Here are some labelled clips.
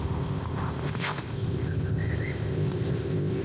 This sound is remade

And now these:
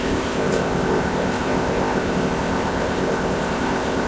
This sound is remade